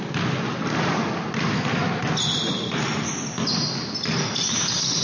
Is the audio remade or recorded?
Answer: recorded